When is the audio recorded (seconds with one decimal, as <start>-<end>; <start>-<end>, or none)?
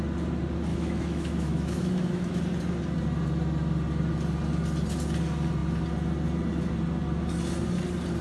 0.0-0.7; 2.4-8.2